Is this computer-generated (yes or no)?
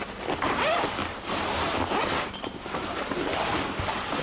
no